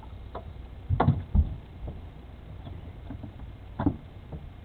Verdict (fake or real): real